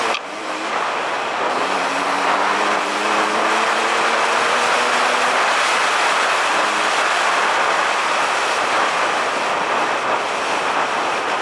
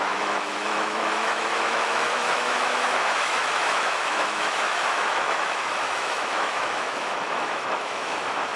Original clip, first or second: first